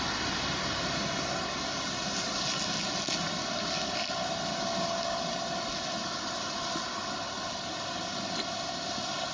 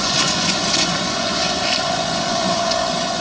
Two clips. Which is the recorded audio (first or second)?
first